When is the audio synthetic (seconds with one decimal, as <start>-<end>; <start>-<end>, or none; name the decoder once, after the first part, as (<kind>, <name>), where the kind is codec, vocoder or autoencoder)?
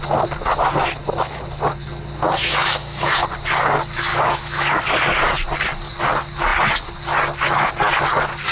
2.4-3.2 (autoencoder, DAC-VAE); 4.1-4.8